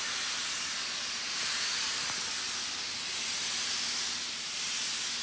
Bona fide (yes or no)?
yes